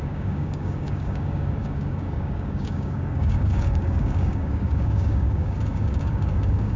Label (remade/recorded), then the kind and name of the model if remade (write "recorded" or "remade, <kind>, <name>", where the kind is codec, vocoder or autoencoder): remade, codec, DAC